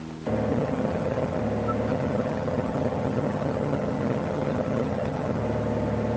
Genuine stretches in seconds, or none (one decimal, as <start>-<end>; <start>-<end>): 0.0-0.5; 1.4-1.9; 5.4-6.2